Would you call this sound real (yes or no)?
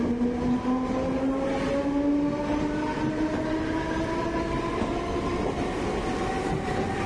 yes